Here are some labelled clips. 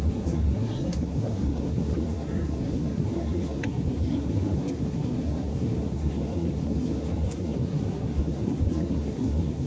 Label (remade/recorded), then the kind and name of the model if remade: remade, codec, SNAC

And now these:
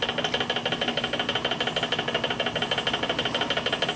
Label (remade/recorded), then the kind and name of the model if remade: recorded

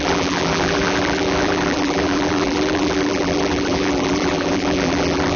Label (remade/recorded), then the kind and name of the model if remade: remade, vocoder, BigVGAN v2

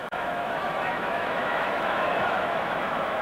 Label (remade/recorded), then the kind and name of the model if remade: remade, autoencoder, DAC-VAE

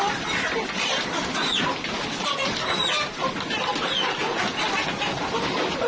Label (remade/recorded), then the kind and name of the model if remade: recorded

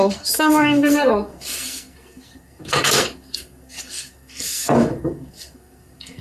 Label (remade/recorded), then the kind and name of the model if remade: remade, codec, SNAC